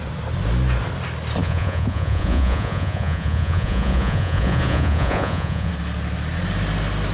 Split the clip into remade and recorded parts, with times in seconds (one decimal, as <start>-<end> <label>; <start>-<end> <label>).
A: 0.0-1.4 recorded; 1.4-5.7 remade; 5.7-7.1 recorded

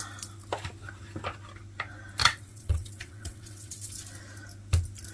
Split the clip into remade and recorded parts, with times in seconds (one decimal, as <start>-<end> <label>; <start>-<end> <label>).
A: 0.0-2.2 recorded; 2.2-3.9 remade; 3.9-5.1 recorded